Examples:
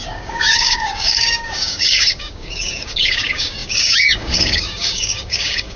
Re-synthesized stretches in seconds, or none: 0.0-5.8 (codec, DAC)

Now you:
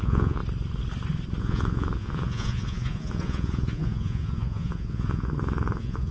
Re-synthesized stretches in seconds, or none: 0.0-0.4 (vocoder, Vocos); 1.4-6.1

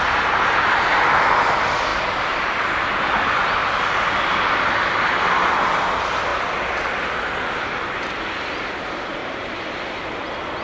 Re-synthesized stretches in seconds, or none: 1.9-2.4 (vocoder, BigVGAN v2); 6.3-7.5; 9.2-9.7

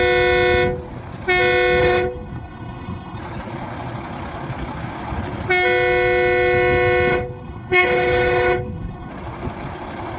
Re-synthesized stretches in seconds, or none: 1.8-3.2 (codec, HILCodec); 7.1-9.1

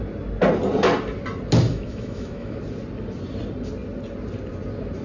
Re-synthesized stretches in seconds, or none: 1.7-2.6 (autoencoder, DAC-VAE)

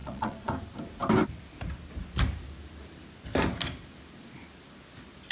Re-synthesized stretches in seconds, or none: 0.0-0.5 (vocoder, Vocos)